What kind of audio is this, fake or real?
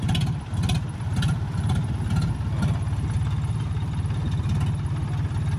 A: real